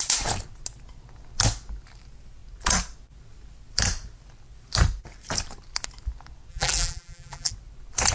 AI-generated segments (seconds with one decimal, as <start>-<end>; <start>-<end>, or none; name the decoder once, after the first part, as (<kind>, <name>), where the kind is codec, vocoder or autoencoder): 6.5-7.5 (vocoder, BigVGAN v2)